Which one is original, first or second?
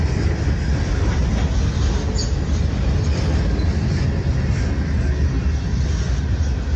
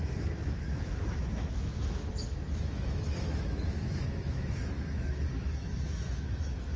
first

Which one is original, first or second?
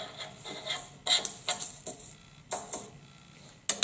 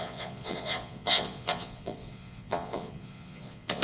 first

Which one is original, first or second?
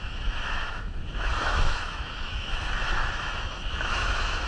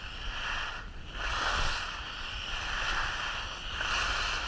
second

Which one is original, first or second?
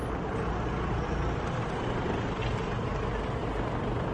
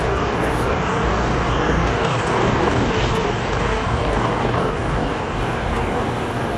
first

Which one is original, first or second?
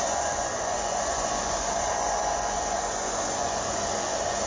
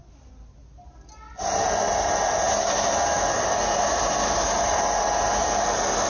second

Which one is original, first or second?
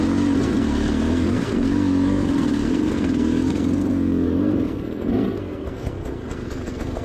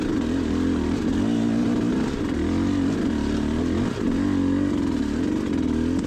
second